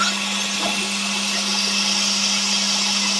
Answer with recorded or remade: recorded